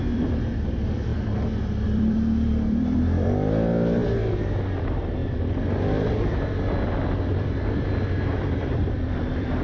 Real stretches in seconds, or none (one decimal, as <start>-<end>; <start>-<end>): 4.0-4.8